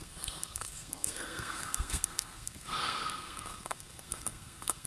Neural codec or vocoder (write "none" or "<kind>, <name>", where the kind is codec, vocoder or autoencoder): codec, SNAC